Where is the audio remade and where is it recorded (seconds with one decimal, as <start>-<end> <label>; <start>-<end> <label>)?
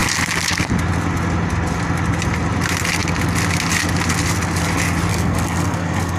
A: 0.0-5.1 recorded; 5.1-6.2 remade